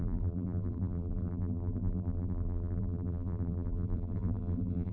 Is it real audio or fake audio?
fake